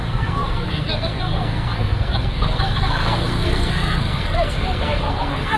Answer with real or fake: fake